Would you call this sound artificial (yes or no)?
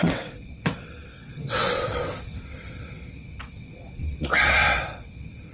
yes